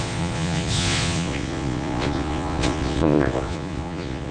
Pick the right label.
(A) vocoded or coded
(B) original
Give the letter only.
A